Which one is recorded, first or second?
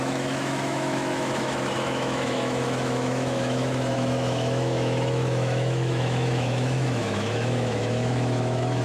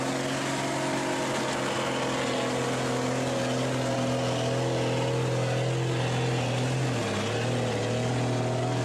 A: second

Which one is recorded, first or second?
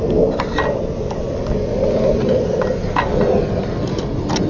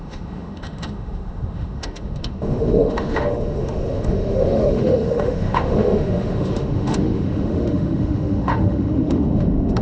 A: first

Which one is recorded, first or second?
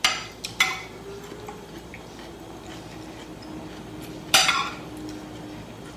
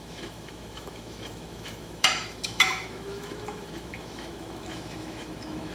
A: first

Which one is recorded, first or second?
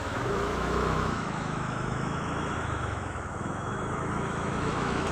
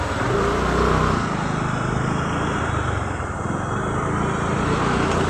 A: second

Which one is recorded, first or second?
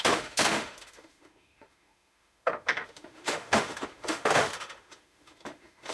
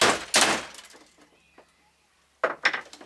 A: second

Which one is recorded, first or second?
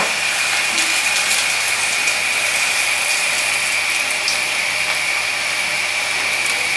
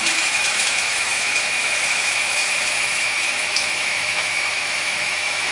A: first